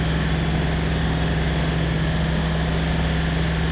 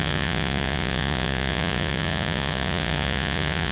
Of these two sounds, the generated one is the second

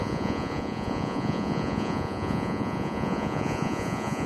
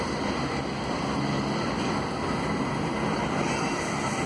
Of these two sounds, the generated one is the first